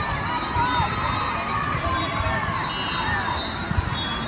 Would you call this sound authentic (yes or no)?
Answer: yes